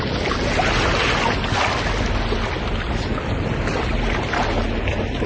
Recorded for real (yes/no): yes